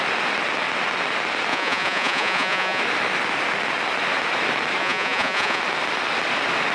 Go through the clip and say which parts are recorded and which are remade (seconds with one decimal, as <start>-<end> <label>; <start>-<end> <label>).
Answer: 0.0-1.5 recorded; 1.5-2.8 remade; 2.8-4.8 recorded; 4.8-5.6 remade; 5.6-6.7 recorded